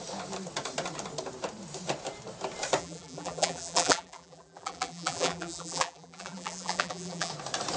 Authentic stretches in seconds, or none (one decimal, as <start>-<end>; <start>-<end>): 0.0-2.8; 7.3-7.8